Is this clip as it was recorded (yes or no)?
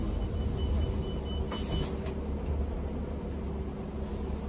yes